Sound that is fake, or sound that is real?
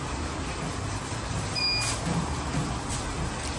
real